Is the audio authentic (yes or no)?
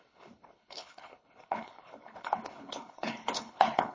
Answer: no